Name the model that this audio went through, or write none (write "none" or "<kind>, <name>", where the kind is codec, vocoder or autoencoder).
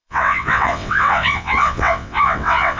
vocoder, WaveNeXt